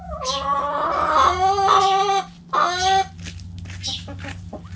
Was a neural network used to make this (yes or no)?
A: no